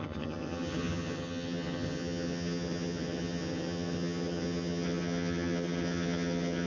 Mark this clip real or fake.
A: fake